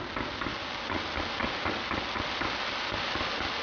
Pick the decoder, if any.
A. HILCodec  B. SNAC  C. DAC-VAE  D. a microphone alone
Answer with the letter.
D